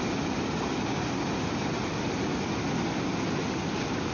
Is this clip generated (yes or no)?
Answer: no